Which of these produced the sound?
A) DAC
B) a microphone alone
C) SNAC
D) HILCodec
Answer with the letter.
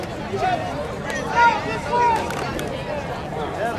B